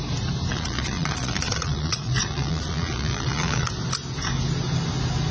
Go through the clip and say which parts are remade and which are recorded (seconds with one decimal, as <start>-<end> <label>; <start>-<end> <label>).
0.0-0.5 recorded; 0.5-3.7 remade; 3.7-5.3 recorded